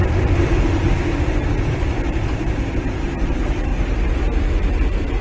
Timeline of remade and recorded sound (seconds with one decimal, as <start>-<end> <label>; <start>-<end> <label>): 0.0-0.8 remade; 0.8-1.7 recorded; 1.7-3.7 remade; 3.7-4.2 recorded; 4.2-5.2 remade